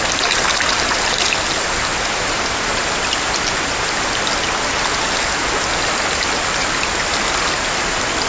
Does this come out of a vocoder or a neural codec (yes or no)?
no